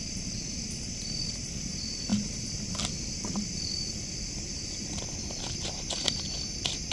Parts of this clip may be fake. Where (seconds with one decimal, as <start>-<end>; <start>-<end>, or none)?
none